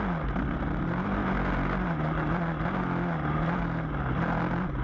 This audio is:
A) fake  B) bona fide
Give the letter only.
B